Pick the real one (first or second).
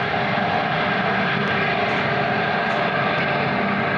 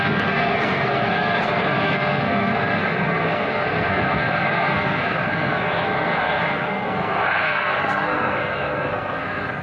first